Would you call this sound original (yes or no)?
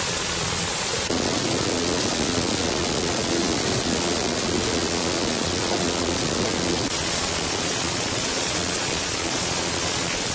no